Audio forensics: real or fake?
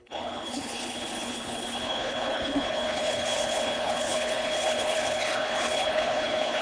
fake